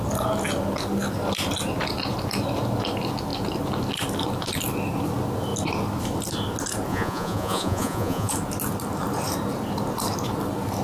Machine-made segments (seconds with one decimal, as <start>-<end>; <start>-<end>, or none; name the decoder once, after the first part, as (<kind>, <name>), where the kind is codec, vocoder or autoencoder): 6.9-8.3 (vocoder, Vocos)